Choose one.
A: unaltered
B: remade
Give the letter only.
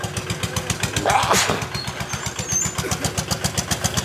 A